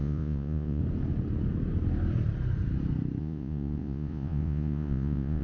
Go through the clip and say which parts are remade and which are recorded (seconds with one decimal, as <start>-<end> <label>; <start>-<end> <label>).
0.0-0.8 remade; 0.8-3.2 recorded; 3.2-5.4 remade